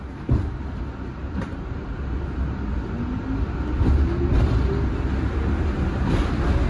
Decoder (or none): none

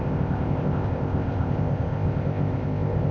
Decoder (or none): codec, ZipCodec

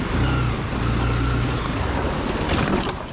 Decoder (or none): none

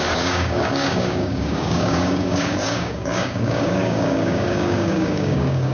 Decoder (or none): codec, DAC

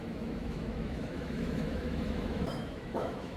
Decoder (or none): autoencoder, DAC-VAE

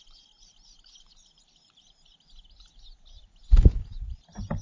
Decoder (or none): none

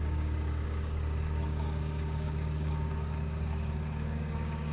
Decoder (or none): codec, DAC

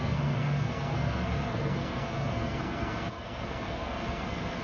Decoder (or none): codec, SNAC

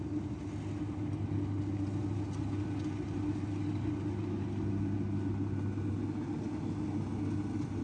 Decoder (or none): none